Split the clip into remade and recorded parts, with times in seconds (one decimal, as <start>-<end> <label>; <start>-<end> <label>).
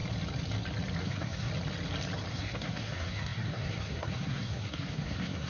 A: 0.0-1.0 recorded; 1.0-1.5 remade; 1.5-2.3 recorded; 2.3-5.5 remade